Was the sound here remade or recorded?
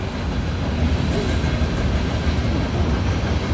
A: recorded